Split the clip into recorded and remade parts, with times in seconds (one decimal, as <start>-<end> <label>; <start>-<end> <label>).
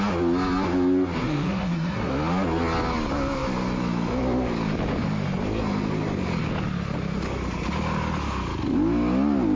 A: 0.0-1.2 recorded; 1.2-2.1 remade; 2.1-9.6 recorded